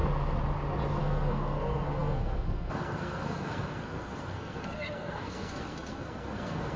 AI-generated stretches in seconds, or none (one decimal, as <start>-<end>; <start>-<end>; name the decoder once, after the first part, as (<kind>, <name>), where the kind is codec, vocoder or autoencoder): 1.0-6.8 (codec, SNAC)